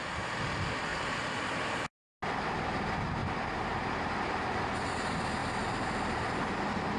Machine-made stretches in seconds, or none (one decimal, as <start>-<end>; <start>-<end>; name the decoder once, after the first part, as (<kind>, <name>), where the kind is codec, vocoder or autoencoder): 0.9-1.9 (vocoder, BigVGAN v2); 3.2-4.3; 5.4-6.4